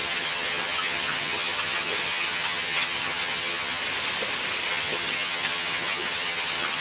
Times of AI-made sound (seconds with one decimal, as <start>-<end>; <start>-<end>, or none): 0.0-3.8; 4.7-6.8